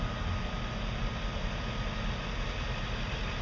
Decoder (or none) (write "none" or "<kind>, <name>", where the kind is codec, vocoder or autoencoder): none